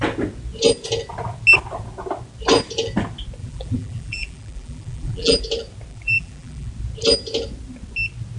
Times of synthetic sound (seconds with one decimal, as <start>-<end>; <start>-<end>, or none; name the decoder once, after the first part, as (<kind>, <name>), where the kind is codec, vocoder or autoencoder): 3.4-5.4 (vocoder, BigVGAN v2); 5.9-6.7